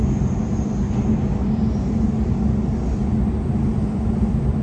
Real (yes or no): yes